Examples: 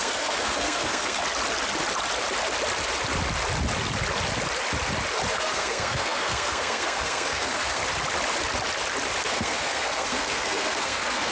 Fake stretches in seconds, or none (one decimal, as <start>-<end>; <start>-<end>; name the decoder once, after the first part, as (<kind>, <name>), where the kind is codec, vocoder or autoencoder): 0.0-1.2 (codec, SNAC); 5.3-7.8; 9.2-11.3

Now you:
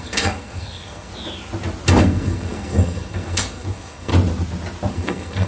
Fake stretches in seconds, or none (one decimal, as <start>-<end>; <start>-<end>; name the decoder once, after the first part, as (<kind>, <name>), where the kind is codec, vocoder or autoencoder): 0.0-1.1 (codec, SNAC); 2.0-4.1; 4.9-5.5

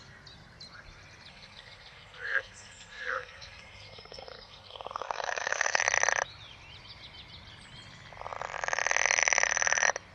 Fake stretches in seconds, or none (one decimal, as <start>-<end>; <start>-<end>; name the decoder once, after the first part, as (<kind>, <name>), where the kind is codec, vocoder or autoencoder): 1.3-5.8 (codec, SNAC)